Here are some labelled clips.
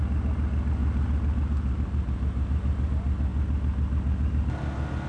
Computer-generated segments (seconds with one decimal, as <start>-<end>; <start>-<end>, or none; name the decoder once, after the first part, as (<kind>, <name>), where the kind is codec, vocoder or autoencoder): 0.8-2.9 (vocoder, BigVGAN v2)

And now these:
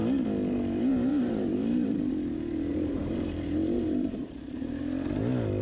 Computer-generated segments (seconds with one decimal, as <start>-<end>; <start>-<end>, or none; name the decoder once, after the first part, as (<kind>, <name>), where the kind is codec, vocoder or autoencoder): 1.1-1.9 (vocoder, BigVGAN v2); 2.7-4.8

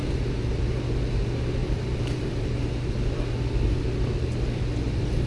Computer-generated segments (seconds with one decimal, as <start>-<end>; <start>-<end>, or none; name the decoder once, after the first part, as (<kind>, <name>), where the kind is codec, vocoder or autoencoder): 0.0-0.7 (vocoder, BigVGAN v2); 1.6-2.6

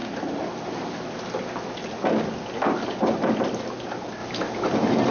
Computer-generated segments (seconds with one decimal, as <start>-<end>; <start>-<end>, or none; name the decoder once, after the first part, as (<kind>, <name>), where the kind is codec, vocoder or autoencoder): 3.1-4.2 (vocoder, BigVGAN v2)

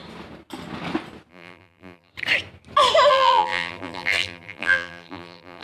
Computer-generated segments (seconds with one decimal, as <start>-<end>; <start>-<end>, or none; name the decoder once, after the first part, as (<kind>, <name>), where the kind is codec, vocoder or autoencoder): 1.3-2.1 (vocoder, BigVGAN v2); 3.1-5.6

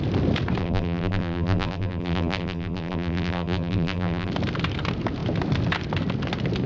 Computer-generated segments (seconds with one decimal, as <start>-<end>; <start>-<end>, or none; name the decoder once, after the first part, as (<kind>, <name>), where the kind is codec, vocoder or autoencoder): 0.6-4.3 (vocoder, BigVGAN v2)